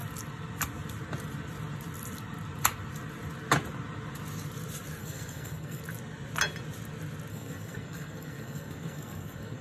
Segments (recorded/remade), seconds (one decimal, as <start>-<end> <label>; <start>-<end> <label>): 0.0-5.0 recorded; 5.0-5.8 remade; 5.8-7.3 recorded; 7.3-9.6 remade

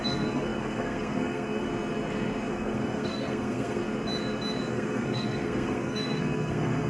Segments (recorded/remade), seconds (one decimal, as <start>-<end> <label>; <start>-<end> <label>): 0.0-1.7 remade; 1.7-2.5 recorded; 2.5-3.8 remade; 3.8-4.7 recorded; 4.7-6.9 remade

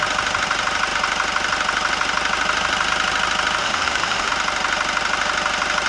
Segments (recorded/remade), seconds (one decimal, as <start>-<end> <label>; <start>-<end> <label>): 0.0-3.6 recorded; 3.6-4.3 remade; 4.3-5.9 recorded

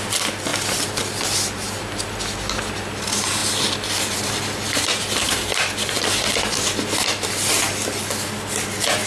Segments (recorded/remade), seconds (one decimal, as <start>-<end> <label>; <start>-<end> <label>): 0.0-9.1 recorded